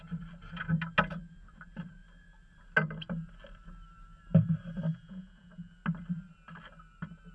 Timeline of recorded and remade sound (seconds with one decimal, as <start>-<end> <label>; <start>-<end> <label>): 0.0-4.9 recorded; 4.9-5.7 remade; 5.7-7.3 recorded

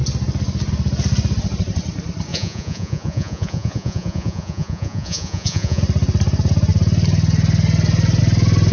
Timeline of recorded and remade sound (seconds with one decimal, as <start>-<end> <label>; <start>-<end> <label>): 0.0-2.3 recorded; 2.3-5.8 remade; 5.8-8.7 recorded

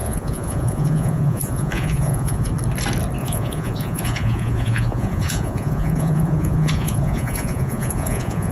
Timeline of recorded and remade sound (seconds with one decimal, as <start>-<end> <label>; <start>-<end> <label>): 0.0-2.5 remade; 2.5-3.2 recorded; 3.2-8.5 remade

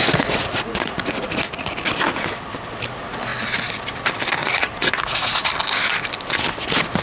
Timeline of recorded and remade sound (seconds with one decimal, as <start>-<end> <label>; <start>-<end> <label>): 0.0-1.6 remade; 1.6-4.4 recorded; 4.4-5.6 remade; 5.6-7.0 recorded

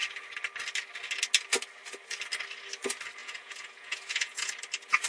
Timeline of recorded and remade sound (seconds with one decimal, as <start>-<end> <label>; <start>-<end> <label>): 0.0-3.2 recorded; 3.2-4.5 remade; 4.5-5.1 recorded

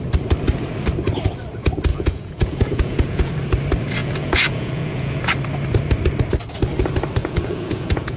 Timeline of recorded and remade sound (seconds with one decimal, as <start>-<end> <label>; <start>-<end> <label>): 0.0-1.9 recorded; 1.9-3.3 remade; 3.3-4.0 recorded; 4.0-5.2 remade; 5.2-7.2 recorded; 7.2-8.2 remade